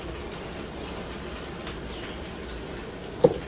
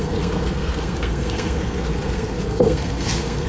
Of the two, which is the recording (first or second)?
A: first